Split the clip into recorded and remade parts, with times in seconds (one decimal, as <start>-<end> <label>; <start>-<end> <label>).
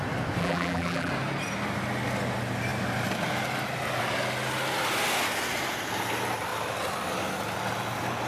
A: 0.0-0.4 recorded; 0.4-1.1 remade; 1.1-8.3 recorded